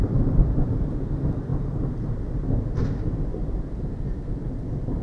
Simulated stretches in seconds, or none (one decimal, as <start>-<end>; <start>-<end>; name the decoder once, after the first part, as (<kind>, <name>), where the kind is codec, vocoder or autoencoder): 0.0-1.5 (vocoder, BigVGAN v2); 3.0-5.0